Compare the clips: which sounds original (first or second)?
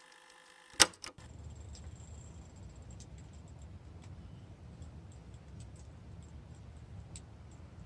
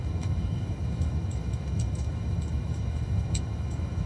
first